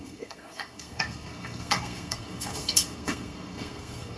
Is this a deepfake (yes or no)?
yes